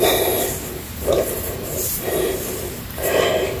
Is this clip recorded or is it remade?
recorded